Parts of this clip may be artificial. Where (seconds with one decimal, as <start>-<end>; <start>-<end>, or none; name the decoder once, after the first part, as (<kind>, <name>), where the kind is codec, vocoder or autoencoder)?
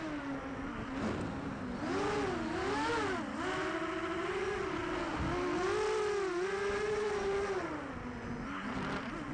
none